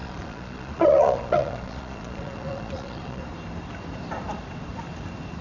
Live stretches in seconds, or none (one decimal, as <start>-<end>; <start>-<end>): 3.2-5.4